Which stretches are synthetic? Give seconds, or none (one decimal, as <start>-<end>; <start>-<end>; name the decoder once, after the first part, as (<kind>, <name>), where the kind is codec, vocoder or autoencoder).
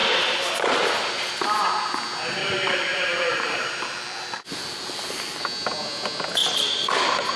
2.4-5.4 (vocoder, BigVGAN v2); 6.4-7.4